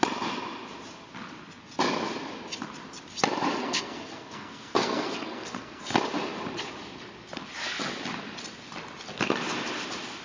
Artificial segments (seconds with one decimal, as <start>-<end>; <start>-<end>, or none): 3.6-5.8

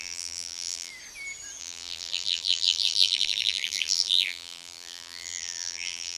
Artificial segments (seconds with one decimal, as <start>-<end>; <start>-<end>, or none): 0.0-0.9; 1.6-6.2

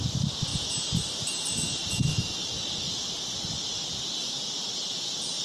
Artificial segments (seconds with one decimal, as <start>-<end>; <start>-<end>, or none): none

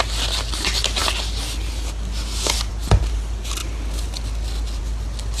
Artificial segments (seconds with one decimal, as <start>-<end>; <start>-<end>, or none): none

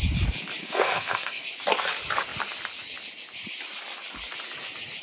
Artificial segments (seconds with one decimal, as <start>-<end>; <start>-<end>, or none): 0.6-1.4

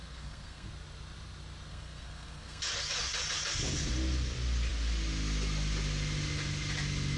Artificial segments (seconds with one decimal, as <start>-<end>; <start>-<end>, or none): 0.0-0.7; 1.7-2.6